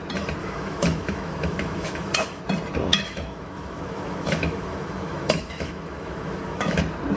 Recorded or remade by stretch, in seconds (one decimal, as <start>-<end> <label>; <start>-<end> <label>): 0.0-0.4 recorded; 0.4-2.4 remade; 2.4-2.9 recorded; 2.9-6.8 remade; 6.8-7.2 recorded